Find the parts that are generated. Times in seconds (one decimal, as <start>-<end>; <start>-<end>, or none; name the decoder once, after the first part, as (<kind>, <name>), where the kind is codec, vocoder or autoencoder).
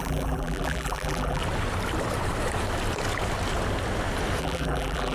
0.0-1.4 (vocoder, BigVGAN v2); 4.4-5.1